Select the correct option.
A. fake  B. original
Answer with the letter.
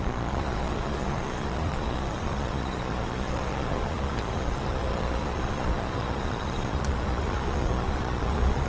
A